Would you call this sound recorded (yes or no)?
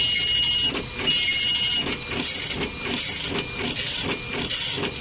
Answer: yes